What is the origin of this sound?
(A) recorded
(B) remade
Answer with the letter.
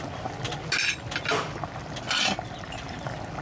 A